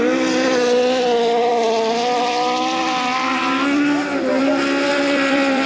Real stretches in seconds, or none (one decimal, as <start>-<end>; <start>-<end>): 0.0-4.9